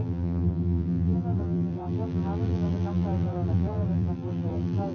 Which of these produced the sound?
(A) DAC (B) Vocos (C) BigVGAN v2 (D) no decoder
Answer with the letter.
C